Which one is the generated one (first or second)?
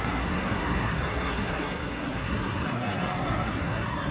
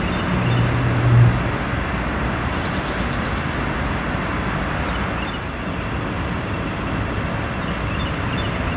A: first